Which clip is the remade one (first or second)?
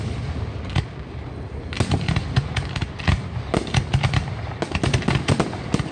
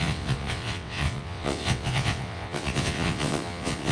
second